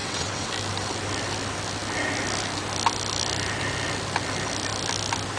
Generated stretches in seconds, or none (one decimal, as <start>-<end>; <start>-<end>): 0.0-0.5